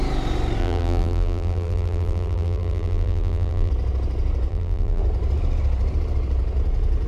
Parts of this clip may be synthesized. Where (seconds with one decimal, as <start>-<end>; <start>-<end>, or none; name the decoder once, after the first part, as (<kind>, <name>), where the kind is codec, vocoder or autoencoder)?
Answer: 0.6-3.7 (vocoder, BigVGAN v2); 4.5-5.0